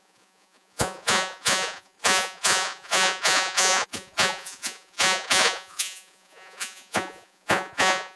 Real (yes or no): no